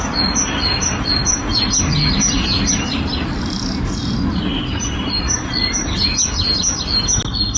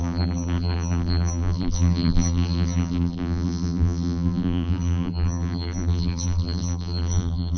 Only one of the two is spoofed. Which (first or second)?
second